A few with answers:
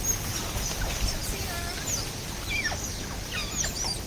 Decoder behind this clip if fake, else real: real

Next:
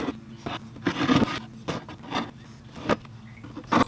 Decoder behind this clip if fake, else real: real